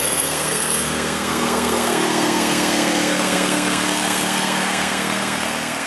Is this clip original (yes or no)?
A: no